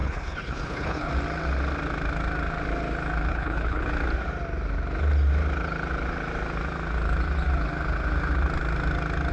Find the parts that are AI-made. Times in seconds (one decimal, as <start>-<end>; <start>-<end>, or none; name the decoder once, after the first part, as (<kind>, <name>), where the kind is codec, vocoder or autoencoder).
0.0-1.1 (codec, HILCodec); 3.3-3.9